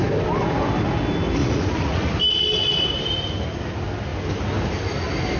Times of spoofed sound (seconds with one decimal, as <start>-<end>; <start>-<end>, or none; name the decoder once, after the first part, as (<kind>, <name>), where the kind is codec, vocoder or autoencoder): 1.4-2.1 (vocoder, Vocos)